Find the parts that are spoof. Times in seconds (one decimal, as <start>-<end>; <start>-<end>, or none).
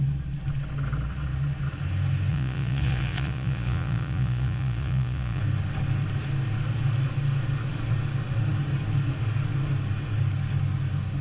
2.3-5.4